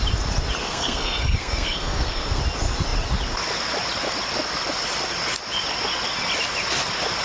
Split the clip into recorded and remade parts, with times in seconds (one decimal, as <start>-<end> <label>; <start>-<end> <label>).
0.0-0.6 recorded; 0.6-2.4 remade; 2.4-7.2 recorded